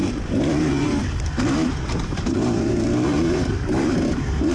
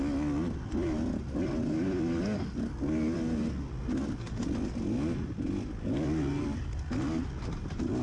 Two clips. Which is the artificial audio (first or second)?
first